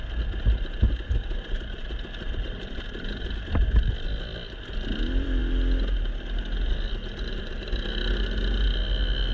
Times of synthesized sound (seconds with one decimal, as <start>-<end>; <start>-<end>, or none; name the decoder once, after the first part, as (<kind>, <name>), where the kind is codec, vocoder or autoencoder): none